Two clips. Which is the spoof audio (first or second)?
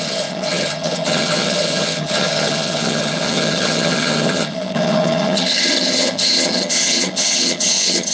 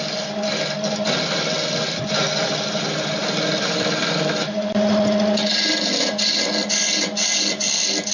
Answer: first